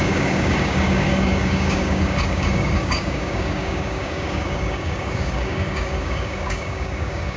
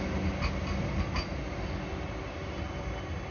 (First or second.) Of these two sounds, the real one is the second